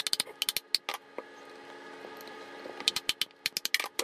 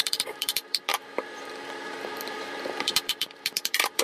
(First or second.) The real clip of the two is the first